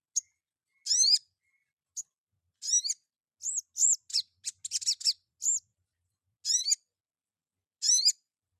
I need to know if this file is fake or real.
real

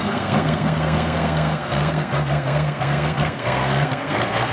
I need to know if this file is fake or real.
fake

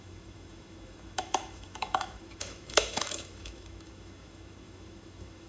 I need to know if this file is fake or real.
fake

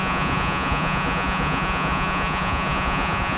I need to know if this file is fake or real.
fake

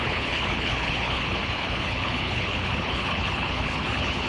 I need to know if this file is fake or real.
fake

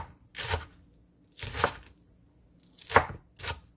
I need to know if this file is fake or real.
real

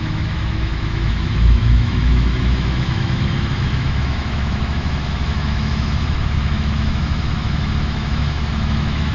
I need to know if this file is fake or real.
fake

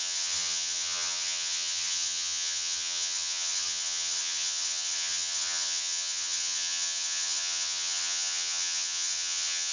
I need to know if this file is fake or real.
fake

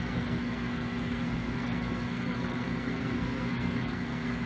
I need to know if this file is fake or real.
fake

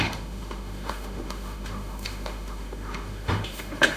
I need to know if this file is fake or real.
fake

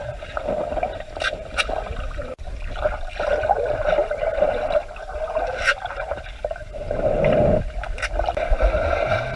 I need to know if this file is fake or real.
real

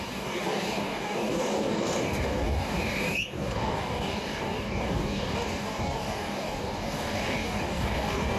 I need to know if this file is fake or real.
fake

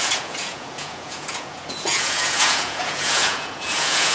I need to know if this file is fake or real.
fake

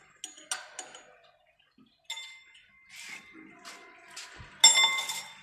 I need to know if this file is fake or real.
real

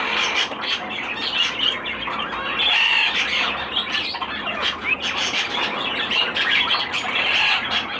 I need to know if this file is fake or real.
real